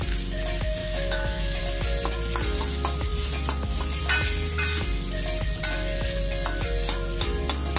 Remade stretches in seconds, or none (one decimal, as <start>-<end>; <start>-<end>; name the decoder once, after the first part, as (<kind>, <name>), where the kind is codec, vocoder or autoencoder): 0.8-1.6 (autoencoder, DAC-VAE)